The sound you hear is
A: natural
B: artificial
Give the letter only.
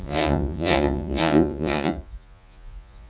B